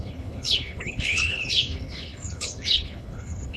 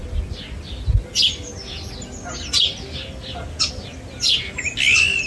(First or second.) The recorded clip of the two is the second